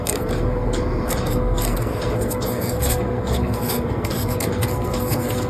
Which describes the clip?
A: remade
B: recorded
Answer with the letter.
A